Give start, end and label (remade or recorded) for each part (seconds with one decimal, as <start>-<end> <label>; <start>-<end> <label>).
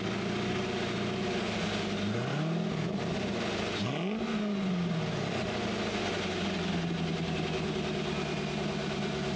0.0-9.4 recorded